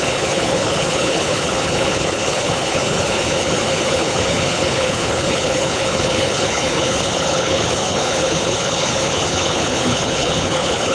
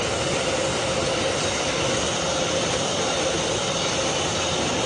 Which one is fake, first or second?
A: first